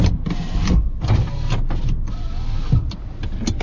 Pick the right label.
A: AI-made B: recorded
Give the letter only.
B